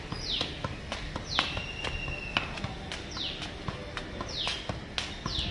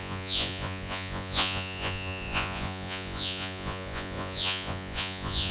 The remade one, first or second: second